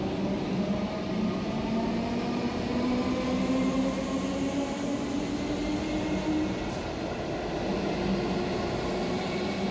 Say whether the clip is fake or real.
real